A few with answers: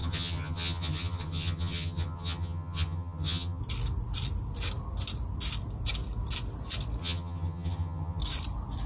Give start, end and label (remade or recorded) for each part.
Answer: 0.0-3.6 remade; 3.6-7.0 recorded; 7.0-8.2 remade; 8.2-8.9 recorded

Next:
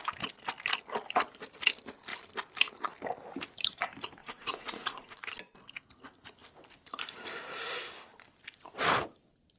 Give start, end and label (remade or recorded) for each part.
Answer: 0.0-4.2 recorded; 4.2-5.2 remade; 5.2-9.6 recorded

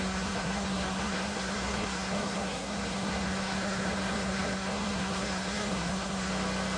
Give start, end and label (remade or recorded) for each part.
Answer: 0.0-6.3 remade; 6.3-6.8 recorded